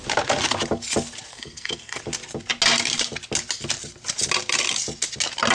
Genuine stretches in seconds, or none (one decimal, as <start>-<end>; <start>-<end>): 0.0-1.3; 2.0-5.5